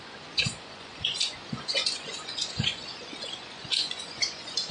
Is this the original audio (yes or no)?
no